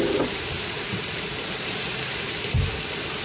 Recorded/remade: recorded